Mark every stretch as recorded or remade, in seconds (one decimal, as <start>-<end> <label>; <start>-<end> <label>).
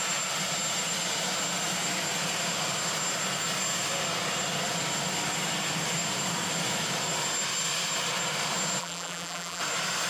0.0-8.8 recorded; 8.8-9.6 remade; 9.6-10.1 recorded